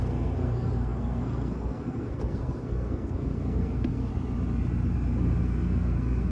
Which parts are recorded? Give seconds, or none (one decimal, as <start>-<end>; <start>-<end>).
4.1-5.4